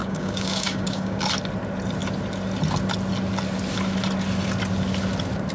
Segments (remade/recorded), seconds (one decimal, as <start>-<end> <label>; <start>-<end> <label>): 0.0-1.2 remade; 1.2-5.5 recorded